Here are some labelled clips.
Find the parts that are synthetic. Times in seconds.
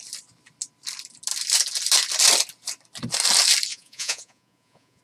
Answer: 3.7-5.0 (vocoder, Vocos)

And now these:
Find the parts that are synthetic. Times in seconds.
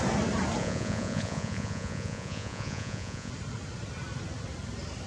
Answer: 0.6-3.3 (vocoder, Vocos)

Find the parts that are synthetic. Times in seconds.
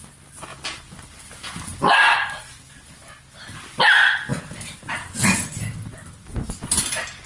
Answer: none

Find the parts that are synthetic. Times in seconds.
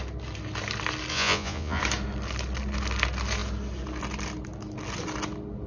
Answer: 1.1-1.8 (vocoder, Vocos)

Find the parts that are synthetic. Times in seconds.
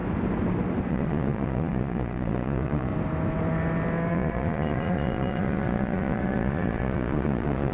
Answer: 0.9-2.9 (vocoder, Vocos); 4.1-7.7